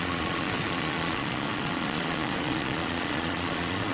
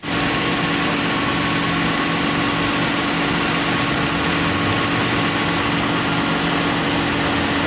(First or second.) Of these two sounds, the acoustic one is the second